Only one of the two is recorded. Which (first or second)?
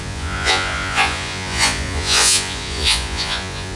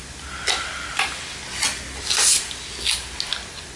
second